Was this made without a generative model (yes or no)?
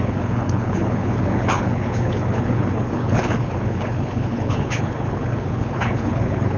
no